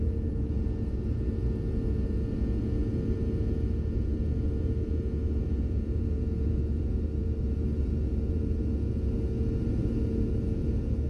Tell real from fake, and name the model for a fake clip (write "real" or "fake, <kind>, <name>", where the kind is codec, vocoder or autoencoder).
fake, vocoder, Vocos